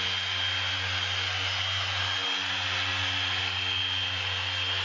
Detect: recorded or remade recorded